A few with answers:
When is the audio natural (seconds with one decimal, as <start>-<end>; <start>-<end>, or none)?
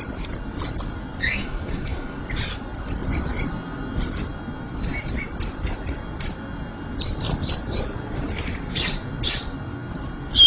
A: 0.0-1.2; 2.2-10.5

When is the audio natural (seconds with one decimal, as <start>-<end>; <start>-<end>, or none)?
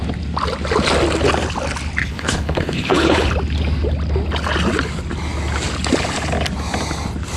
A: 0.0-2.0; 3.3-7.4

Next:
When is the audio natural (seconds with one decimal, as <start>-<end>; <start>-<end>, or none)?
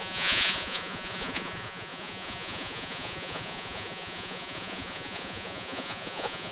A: none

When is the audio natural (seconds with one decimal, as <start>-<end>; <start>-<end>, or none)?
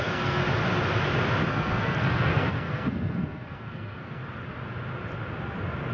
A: 0.4-1.5; 4.2-5.9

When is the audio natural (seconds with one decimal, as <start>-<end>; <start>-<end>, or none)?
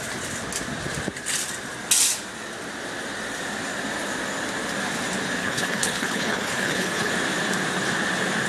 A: 0.0-5.4; 7.1-8.5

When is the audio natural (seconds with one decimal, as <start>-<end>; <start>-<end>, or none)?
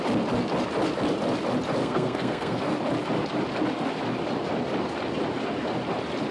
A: 0.0-1.8; 2.6-6.3